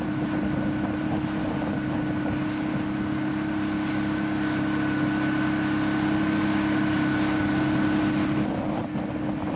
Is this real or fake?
real